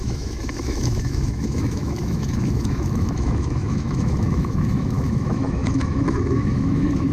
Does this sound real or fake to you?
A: fake